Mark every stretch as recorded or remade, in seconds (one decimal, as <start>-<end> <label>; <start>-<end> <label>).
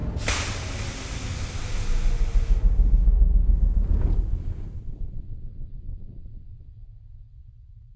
0.0-4.8 recorded; 4.8-8.0 remade